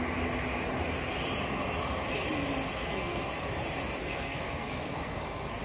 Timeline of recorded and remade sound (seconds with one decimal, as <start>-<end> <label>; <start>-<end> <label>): 0.0-2.7 recorded; 2.7-3.3 remade; 3.3-4.0 recorded; 4.0-5.6 remade